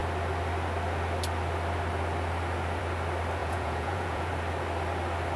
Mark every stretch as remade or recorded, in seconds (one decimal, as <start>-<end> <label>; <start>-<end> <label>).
0.0-3.4 recorded; 3.4-4.3 remade; 4.3-5.4 recorded